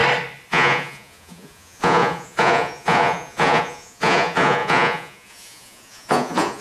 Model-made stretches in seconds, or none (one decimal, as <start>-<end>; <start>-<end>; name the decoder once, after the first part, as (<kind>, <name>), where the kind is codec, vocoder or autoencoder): 0.5-6.6 (vocoder, Vocos)